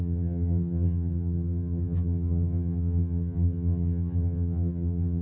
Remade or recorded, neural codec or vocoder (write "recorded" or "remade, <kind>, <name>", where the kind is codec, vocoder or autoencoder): remade, vocoder, HiFi-GAN